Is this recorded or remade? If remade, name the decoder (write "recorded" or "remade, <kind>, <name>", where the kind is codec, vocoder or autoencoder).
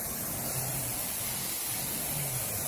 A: recorded